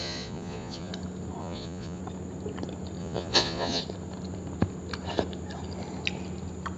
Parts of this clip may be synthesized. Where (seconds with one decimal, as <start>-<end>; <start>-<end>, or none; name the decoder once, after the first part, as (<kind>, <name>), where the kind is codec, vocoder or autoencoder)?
0.0-0.9 (vocoder, Vocos); 1.4-2.0; 3.0-3.8